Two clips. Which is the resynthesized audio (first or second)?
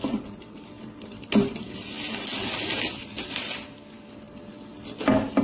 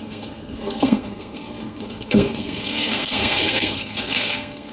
second